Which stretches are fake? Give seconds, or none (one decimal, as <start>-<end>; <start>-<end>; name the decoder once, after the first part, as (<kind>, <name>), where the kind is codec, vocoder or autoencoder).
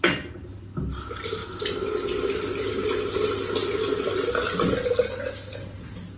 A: none